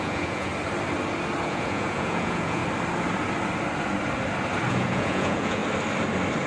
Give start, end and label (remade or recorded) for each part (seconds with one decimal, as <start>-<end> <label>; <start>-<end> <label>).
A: 0.0-0.5 remade; 0.5-1.5 recorded; 1.5-2.6 remade; 2.6-4.7 recorded; 4.7-5.6 remade; 5.6-6.5 recorded